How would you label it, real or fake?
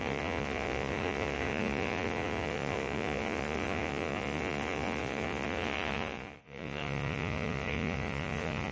fake